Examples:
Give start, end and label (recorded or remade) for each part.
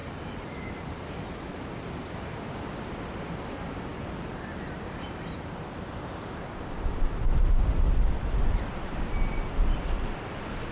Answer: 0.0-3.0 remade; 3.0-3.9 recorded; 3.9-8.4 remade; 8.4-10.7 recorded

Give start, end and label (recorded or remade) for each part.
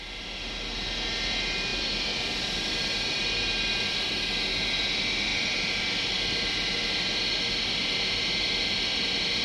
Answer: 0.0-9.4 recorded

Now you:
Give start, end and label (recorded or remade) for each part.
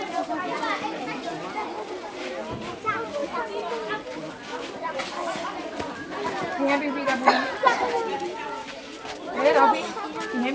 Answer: 0.0-1.6 recorded; 1.6-2.3 remade; 2.3-3.2 recorded; 3.2-4.3 remade; 4.3-10.5 recorded